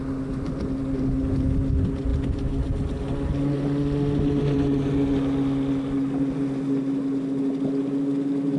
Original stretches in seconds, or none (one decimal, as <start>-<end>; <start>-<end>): 0.0-8.6